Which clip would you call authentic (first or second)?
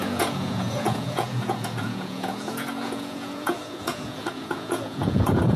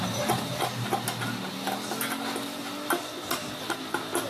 second